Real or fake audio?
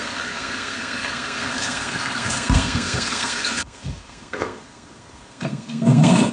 fake